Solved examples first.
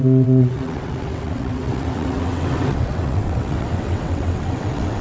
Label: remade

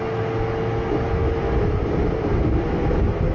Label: recorded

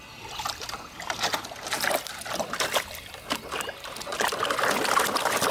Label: recorded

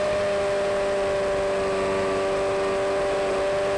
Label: recorded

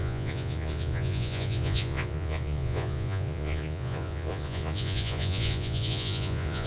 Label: remade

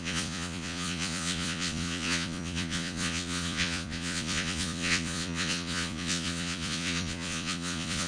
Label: remade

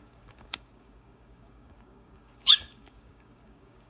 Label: remade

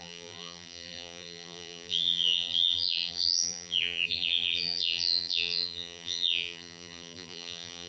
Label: remade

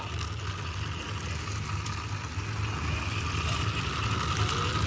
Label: recorded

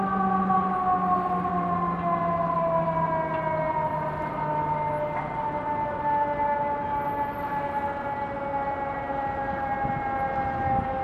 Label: recorded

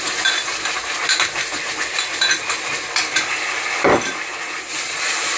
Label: remade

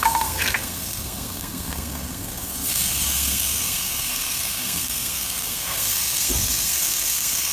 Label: remade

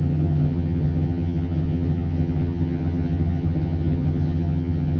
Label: remade